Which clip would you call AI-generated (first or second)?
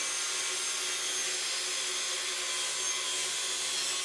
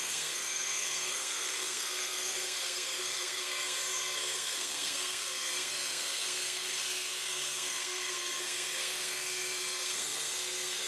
second